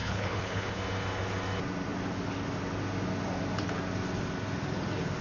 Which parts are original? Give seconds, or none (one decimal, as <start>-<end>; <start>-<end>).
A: 0.8-5.2